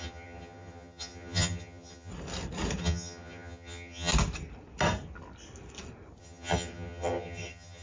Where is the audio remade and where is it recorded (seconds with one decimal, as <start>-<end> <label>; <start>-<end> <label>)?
0.0-2.1 remade; 2.1-2.8 recorded; 2.8-4.1 remade; 4.1-6.2 recorded; 6.2-7.8 remade